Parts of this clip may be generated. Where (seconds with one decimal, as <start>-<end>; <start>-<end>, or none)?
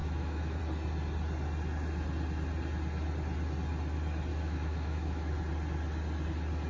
0.0-0.6; 4.3-5.3